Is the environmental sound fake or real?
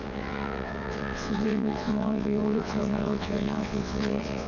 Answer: fake